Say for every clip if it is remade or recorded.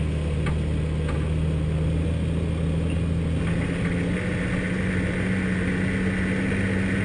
recorded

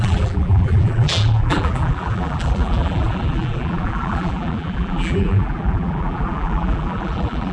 remade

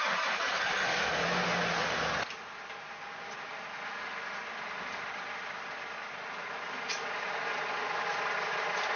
recorded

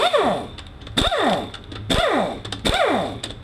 recorded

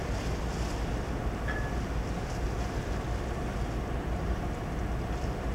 recorded